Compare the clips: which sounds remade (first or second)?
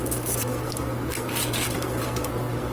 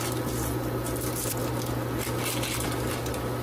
first